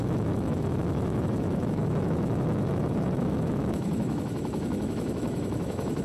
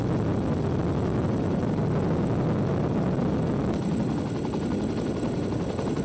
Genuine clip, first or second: second